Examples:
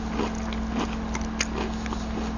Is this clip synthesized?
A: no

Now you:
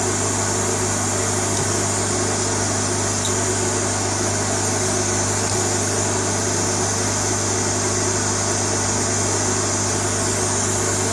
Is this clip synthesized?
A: no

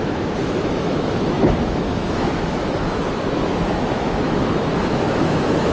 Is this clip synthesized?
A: yes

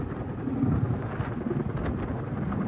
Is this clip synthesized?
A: no